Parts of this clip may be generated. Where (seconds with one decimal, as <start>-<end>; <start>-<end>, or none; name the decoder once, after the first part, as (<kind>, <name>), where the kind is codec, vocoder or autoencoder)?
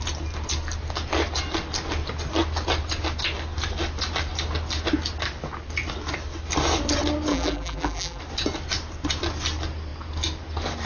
7.3-8.2 (vocoder, BigVGAN v2)